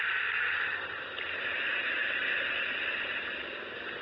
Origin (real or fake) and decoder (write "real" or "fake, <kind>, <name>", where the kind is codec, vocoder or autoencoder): real